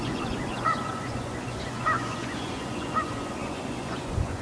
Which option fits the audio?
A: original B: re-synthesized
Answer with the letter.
B